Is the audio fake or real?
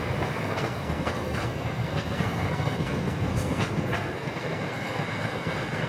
fake